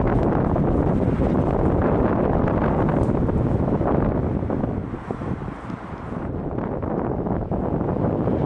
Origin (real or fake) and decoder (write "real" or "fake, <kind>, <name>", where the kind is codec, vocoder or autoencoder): real